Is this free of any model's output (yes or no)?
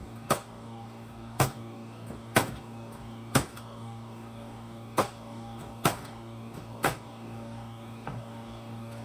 no